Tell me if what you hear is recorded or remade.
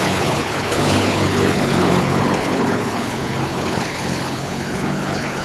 remade